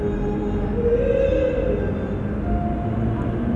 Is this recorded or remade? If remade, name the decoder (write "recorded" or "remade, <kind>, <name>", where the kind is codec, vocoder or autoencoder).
recorded